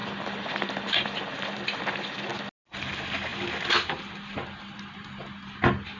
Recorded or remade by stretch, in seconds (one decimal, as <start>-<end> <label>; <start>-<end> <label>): 0.0-1.9 remade; 1.9-6.0 recorded

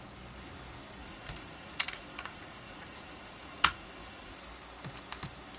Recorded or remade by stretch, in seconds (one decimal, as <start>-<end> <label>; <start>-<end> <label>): 0.0-1.0 recorded; 1.0-4.4 remade; 4.4-5.6 recorded

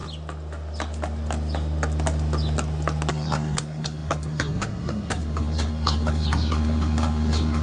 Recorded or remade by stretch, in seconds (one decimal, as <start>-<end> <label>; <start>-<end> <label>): 0.0-3.1 recorded; 3.1-7.6 remade